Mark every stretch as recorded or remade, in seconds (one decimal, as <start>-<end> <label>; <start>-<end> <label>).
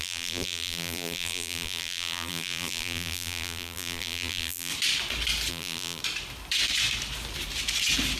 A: 0.0-4.7 remade; 4.7-5.5 recorded; 5.5-6.0 remade; 6.0-8.2 recorded